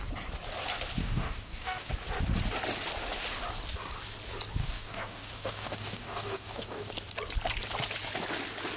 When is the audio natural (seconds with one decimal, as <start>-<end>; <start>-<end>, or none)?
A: 0.0-1.0; 1.9-4.6; 6.9-8.8